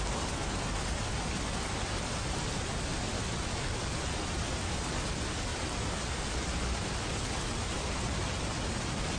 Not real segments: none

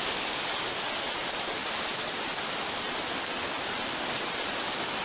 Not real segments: none